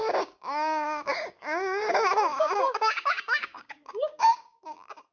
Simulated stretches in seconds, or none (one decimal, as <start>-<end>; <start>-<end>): 0.0-5.1